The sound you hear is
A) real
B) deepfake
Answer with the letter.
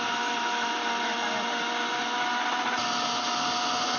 A